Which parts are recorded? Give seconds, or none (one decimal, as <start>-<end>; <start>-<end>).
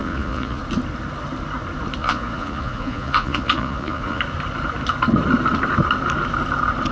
0.6-2.0; 4.2-6.9